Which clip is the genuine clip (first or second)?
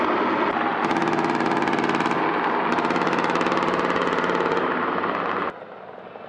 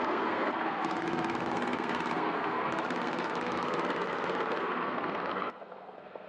first